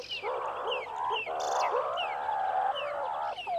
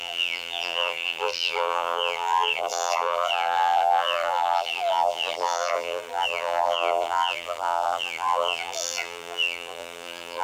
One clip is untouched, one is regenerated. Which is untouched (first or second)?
first